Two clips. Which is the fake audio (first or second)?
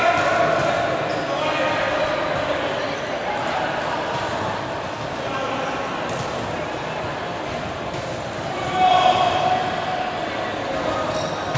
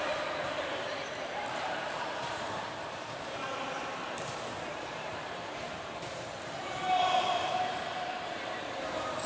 second